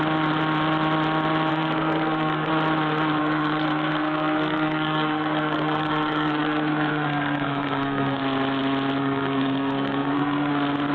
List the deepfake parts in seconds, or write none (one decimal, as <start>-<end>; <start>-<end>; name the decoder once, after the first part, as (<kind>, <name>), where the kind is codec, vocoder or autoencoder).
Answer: 1.5-2.5 (codec, SNAC); 3.2-8.2; 9.0-10.5